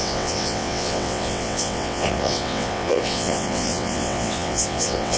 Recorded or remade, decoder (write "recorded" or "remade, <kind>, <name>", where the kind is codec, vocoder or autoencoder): remade, vocoder, WaveNeXt